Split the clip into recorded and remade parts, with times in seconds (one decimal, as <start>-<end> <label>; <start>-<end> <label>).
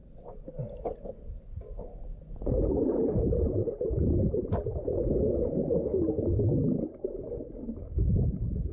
0.0-8.7 recorded